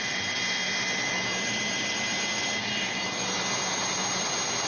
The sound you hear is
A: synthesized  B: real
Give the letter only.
B